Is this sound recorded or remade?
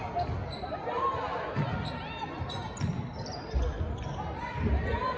recorded